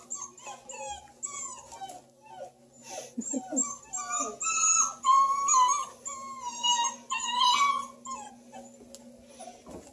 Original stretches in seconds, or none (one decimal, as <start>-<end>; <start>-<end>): 0.0-9.9